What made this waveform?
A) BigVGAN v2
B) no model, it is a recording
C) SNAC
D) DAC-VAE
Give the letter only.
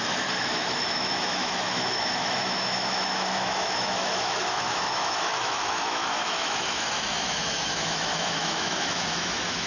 D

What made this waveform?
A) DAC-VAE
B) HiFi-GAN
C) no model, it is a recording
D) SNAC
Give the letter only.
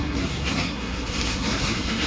D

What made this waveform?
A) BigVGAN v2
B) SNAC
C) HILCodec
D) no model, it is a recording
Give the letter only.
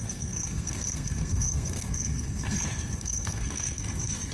B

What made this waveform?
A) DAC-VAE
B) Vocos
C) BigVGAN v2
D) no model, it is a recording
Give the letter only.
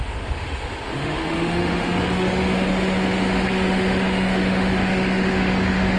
A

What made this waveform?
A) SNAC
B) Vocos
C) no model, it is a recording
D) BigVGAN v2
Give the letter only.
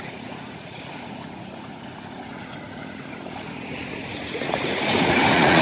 B